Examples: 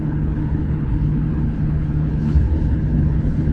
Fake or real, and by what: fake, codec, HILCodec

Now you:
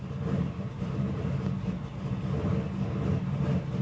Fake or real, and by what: real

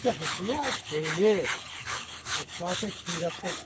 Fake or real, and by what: fake, codec, HILCodec